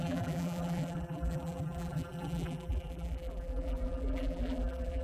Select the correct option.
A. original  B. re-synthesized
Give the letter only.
B